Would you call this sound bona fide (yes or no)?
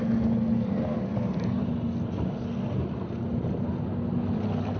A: yes